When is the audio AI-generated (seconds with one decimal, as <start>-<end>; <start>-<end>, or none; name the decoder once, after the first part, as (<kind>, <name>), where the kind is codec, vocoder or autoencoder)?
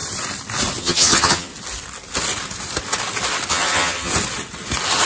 0.8-1.5 (vocoder, HiFi-GAN); 3.5-4.1